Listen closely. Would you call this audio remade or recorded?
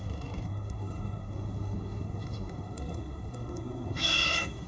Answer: remade